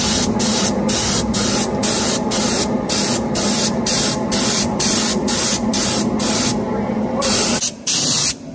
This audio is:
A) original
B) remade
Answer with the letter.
A